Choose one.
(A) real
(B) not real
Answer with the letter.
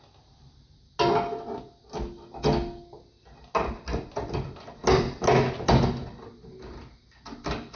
A